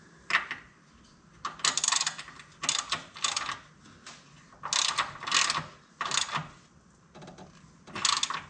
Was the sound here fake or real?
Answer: real